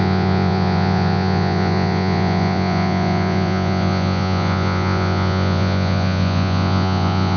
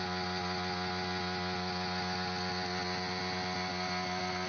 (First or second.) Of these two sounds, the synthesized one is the first